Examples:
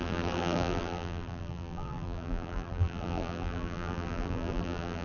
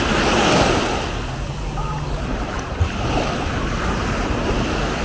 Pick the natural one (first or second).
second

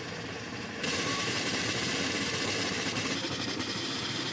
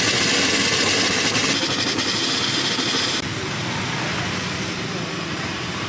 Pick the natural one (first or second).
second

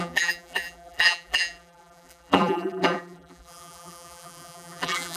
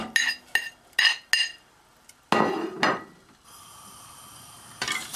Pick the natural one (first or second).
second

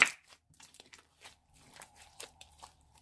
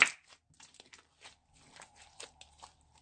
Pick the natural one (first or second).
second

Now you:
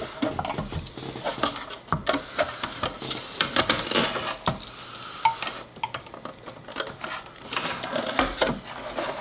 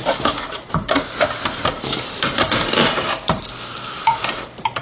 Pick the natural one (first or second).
first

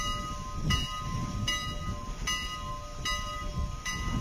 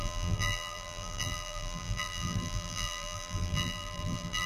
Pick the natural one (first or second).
first